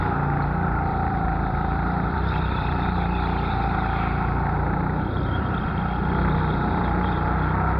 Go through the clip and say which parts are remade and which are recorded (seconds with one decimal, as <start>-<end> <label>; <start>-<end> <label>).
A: 0.0-0.9 recorded; 0.9-2.9 remade; 2.9-7.8 recorded